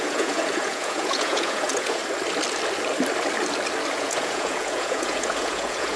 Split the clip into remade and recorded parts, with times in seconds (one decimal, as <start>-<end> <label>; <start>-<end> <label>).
0.0-2.0 remade; 2.0-3.9 recorded; 3.9-6.0 remade